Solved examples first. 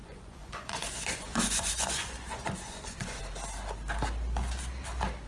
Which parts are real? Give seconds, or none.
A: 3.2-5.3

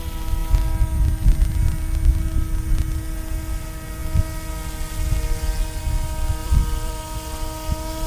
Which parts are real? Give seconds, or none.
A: 0.0-6.4; 6.9-8.1

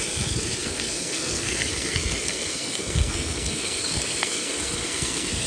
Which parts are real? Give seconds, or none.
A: none

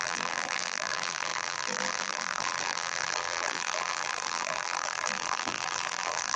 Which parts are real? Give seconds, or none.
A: none

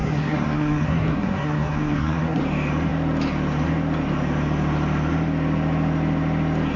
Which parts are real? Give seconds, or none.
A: 2.4-6.8